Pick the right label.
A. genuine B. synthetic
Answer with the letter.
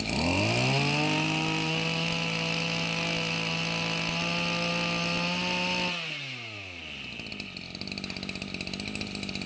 A